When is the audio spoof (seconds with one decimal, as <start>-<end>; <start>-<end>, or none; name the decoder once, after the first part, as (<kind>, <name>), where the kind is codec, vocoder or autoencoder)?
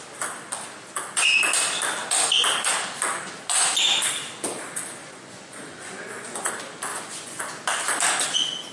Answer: 5.0-6.5 (vocoder, Vocos); 6.9-7.4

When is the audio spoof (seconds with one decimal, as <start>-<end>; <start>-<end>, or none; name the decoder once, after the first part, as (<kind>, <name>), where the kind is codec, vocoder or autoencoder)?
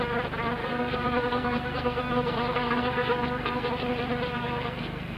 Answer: 0.6-3.7 (codec, SNAC); 4.3-5.2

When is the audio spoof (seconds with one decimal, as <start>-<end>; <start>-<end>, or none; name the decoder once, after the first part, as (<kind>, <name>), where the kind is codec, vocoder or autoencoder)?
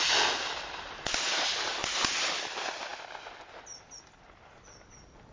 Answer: none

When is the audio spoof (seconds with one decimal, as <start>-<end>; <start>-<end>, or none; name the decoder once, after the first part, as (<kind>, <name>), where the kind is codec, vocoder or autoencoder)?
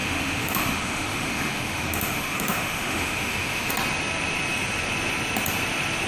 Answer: 0.0-3.7 (autoencoder, DAC-VAE)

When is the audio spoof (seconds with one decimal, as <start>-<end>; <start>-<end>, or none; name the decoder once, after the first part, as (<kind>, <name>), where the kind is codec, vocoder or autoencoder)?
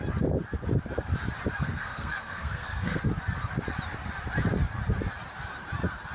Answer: 1.6-3.0 (codec, SNAC)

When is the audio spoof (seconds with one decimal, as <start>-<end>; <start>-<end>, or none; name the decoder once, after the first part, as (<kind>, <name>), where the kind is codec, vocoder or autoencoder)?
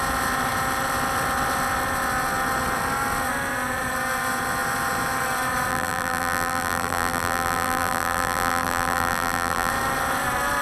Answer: 5.7-9.7 (vocoder, BigVGAN v2)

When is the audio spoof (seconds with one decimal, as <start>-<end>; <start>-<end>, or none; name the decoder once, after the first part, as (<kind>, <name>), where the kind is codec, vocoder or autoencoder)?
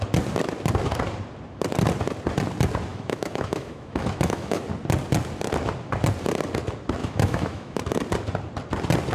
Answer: 2.9-4.6 (autoencoder, DAC-VAE); 7.0-7.8